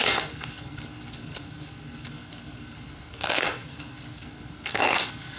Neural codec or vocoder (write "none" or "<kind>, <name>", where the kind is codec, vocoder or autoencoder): codec, SNAC